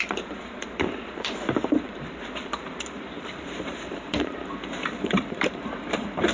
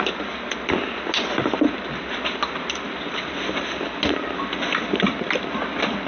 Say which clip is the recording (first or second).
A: second